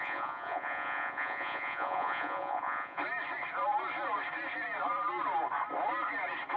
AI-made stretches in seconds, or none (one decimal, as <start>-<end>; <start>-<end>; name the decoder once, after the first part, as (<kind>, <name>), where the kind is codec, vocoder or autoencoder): 0.0-3.0 (vocoder, Vocos)